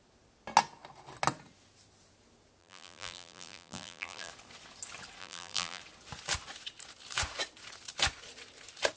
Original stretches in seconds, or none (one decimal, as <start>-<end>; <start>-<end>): 0.0-2.6; 4.3-5.2; 5.8-9.0